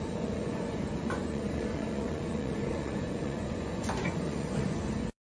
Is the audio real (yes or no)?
no